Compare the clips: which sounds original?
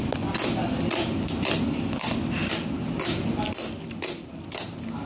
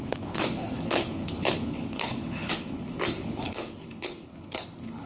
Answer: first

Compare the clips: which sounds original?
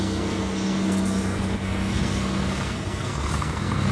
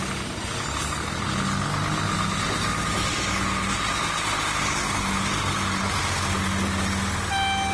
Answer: second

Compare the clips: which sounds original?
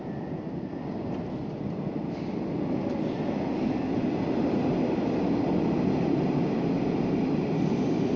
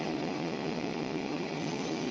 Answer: first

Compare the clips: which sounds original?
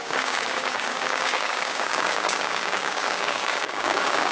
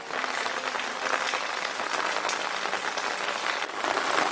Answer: second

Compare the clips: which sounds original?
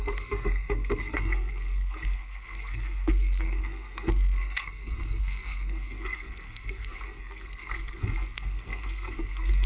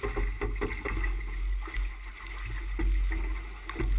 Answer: second